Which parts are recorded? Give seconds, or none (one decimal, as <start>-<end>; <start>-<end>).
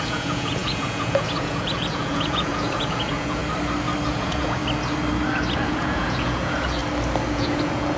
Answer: 3.4-4.1; 4.6-5.7; 6.8-7.3